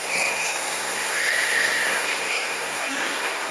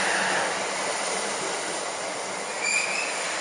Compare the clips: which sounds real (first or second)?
second